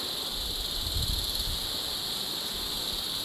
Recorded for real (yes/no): yes